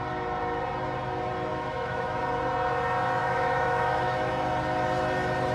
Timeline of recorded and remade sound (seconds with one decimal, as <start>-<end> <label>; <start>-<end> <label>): 0.0-1.5 recorded; 1.5-2.2 remade; 2.2-3.2 recorded; 3.2-4.3 remade; 4.3-5.5 recorded